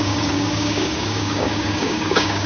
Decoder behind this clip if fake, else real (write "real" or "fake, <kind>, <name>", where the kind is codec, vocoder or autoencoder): fake, codec, DAC